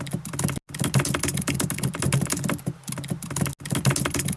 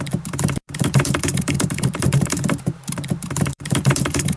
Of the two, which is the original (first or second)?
first